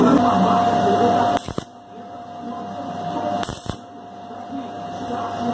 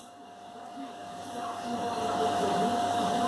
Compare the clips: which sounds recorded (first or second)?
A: first